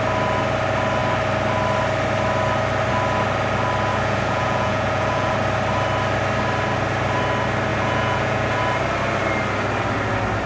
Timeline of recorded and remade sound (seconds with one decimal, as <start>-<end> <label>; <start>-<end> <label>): 0.0-3.9 recorded; 3.9-5.3 remade; 5.3-7.7 recorded; 7.7-8.6 remade; 8.6-10.5 recorded